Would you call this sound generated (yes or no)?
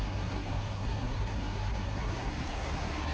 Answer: yes